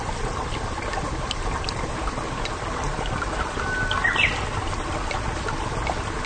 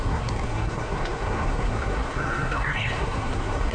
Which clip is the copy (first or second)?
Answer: second